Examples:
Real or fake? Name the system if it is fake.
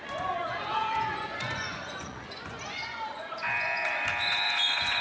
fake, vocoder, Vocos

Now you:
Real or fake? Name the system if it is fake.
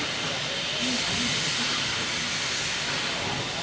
real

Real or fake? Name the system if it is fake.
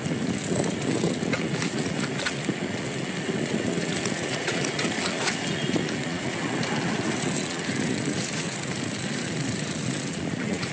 fake, vocoder, Vocos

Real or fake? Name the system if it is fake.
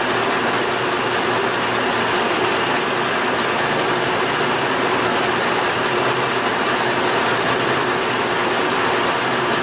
real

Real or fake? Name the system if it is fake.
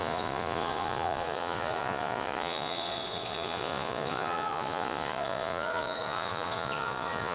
fake, vocoder, Vocos